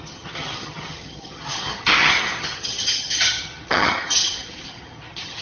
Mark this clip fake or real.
fake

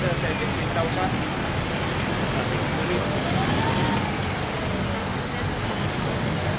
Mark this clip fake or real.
real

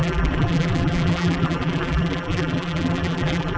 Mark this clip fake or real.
fake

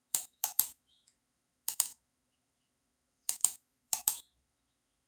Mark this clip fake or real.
fake